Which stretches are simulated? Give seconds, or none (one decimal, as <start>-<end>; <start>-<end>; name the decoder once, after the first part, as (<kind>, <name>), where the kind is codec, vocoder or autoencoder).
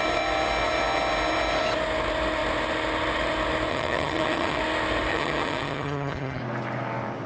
3.7-4.6 (vocoder, HiFi-GAN); 5.1-6.4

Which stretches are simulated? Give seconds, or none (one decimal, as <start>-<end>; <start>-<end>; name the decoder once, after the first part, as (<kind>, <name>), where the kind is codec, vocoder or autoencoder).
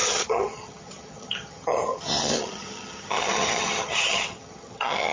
0.0-5.1 (vocoder, HiFi-GAN)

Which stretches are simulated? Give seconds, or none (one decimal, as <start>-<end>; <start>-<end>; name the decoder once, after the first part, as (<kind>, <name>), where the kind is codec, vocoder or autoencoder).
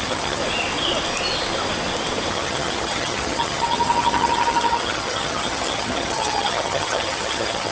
0.0-0.4 (vocoder, HiFi-GAN); 2.3-7.7